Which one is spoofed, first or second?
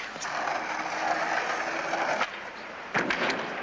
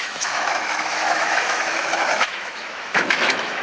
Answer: second